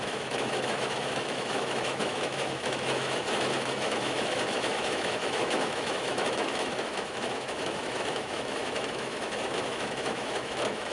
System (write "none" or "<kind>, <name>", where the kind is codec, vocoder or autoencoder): autoencoder, DAC-VAE